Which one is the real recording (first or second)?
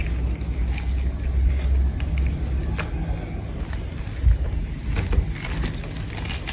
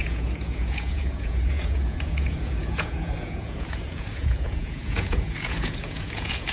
first